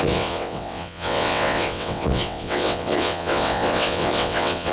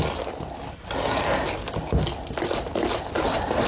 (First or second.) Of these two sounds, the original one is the second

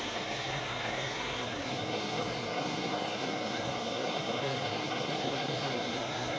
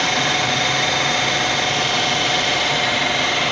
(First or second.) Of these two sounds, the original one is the second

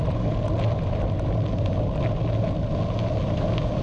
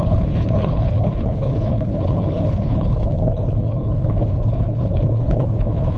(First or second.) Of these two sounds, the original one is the first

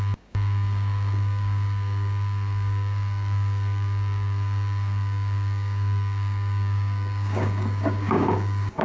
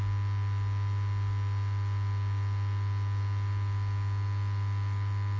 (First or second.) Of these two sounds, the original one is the second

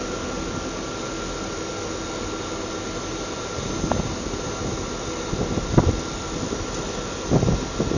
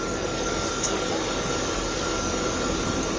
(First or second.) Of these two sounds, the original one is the first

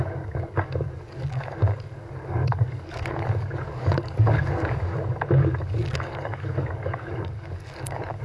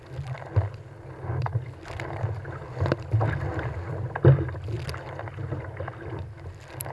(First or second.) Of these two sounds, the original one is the second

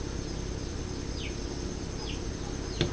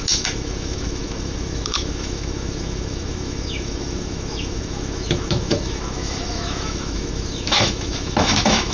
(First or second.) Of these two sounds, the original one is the first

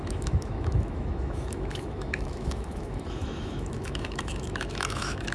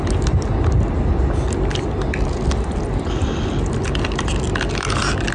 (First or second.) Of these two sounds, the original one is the second